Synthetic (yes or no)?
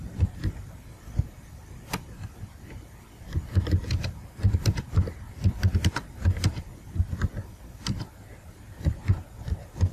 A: yes